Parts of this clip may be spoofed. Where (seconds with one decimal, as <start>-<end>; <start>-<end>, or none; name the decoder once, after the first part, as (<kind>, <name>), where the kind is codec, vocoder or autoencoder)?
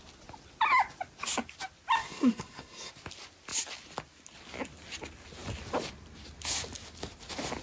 2.0-2.9 (codec, SNAC)